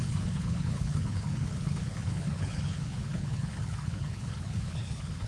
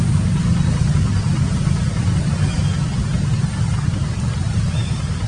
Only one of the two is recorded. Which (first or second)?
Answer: second